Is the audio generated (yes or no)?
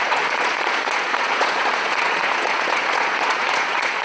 yes